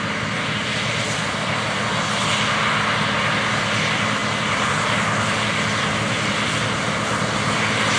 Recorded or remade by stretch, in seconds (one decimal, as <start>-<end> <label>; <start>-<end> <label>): 0.0-4.2 recorded; 4.2-6.5 remade; 6.5-8.0 recorded